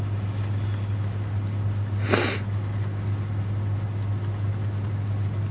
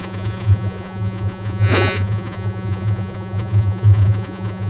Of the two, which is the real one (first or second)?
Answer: first